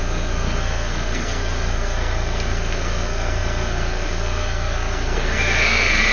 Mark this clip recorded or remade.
remade